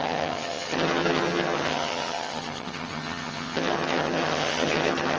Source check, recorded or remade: remade